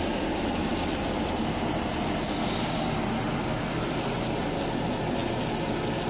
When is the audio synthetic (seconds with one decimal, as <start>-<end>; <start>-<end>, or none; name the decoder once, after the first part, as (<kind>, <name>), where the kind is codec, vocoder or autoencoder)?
none